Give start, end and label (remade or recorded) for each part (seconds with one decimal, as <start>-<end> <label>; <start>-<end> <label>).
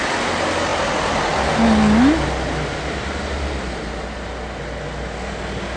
0.0-5.8 recorded